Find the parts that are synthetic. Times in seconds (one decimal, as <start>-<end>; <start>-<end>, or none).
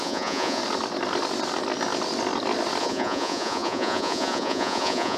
0.0-0.6; 2.8-5.2